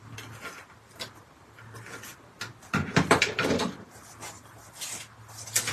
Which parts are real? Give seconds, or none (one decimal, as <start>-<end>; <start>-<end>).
0.0-5.7